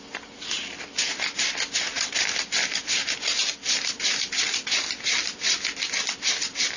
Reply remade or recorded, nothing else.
recorded